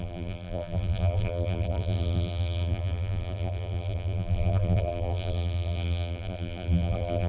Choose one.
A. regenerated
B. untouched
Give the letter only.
A